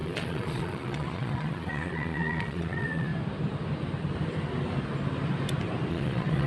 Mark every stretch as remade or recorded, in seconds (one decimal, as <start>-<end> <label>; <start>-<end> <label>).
0.0-3.1 remade; 3.1-5.9 recorded; 5.9-6.5 remade